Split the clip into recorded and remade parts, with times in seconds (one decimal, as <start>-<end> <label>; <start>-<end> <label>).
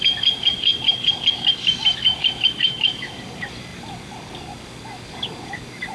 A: 0.0-5.9 remade